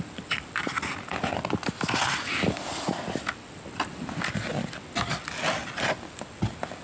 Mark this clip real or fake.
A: real